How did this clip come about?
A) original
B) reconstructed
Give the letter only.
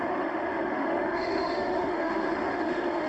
B